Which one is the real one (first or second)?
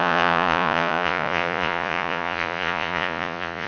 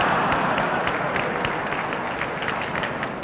second